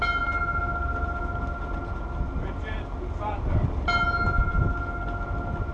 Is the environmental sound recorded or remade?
recorded